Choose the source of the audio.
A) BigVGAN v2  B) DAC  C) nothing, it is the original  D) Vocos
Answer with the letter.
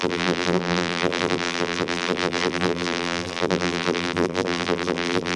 A